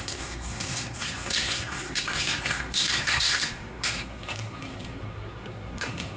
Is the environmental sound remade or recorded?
remade